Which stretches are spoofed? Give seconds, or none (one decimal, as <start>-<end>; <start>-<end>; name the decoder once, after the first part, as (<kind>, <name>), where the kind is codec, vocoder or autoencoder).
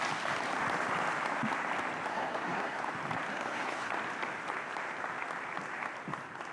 2.1-2.8 (codec, SNAC); 3.3-3.9